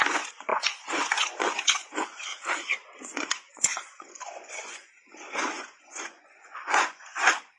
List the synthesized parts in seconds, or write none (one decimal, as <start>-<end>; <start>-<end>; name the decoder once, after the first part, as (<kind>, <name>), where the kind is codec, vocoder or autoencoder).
0.0-2.3 (vocoder, Vocos); 3.0-7.6